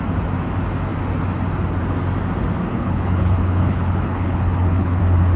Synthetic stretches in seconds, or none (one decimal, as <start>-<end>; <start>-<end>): 2.7-5.0